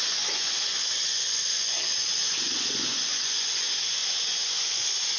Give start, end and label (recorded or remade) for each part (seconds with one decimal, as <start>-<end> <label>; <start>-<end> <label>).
0.0-5.2 remade